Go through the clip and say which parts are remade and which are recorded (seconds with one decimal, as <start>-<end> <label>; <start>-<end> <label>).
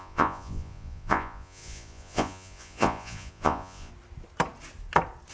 0.0-3.9 remade; 3.9-5.3 recorded